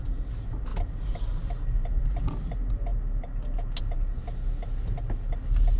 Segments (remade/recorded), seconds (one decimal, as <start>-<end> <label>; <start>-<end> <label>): 0.0-5.8 recorded